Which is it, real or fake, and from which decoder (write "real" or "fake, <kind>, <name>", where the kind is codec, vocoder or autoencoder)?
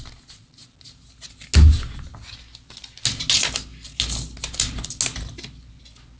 real